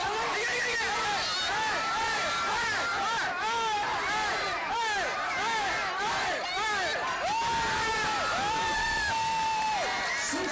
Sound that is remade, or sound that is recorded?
recorded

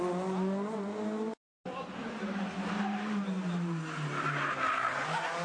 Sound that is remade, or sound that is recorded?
recorded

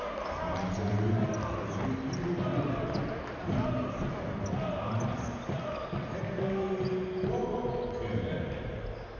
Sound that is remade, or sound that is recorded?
recorded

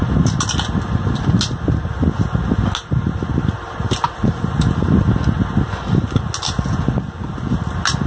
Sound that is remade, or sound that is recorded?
recorded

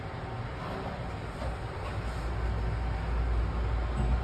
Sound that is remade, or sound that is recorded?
recorded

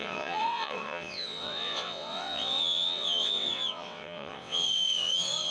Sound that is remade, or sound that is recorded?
remade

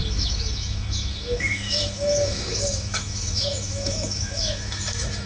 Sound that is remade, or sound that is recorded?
remade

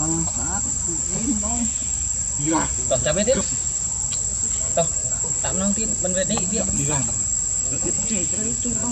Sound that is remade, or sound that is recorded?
recorded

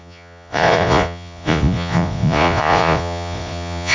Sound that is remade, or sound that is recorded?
remade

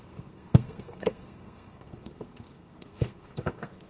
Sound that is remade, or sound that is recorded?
remade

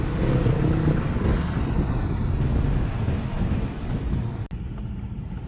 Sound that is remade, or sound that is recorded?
recorded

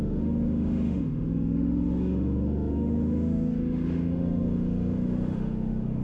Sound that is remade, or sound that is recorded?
remade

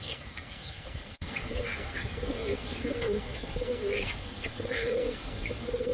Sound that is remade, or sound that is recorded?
remade